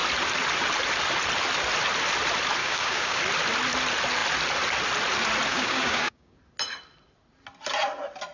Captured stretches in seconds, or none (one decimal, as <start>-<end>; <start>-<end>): 0.0-2.6; 3.2-5.5; 6.4-8.3